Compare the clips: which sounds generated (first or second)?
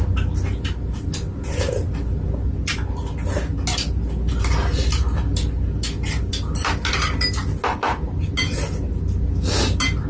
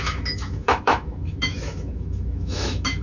second